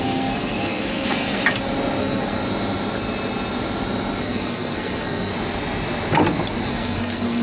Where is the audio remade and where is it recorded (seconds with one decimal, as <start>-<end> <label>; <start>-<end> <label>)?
0.0-1.4 remade; 1.4-2.0 recorded; 2.0-2.4 remade; 2.4-4.2 recorded; 4.2-5.3 remade; 5.3-6.7 recorded; 6.7-7.4 remade